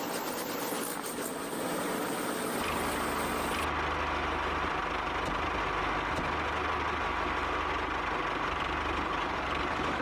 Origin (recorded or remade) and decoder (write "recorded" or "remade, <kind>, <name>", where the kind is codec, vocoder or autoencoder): recorded